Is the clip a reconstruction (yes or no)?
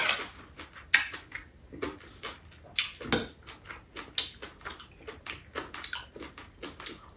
no